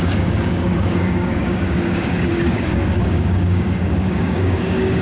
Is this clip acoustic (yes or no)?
no